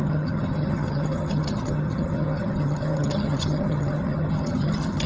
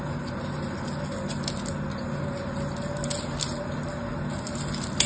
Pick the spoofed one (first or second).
first